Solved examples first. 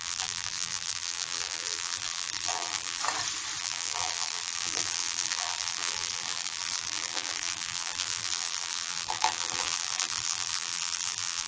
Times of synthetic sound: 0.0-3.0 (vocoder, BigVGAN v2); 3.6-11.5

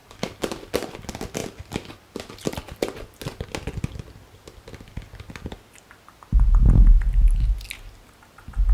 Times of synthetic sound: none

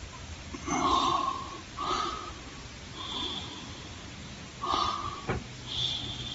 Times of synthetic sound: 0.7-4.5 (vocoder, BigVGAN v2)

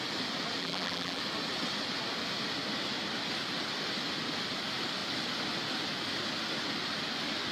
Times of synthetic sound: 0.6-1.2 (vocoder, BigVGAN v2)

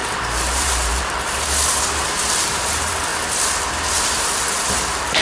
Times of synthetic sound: 0.0-3.1 (vocoder, BigVGAN v2); 4.4-5.2

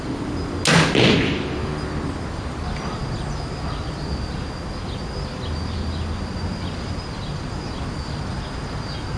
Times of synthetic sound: none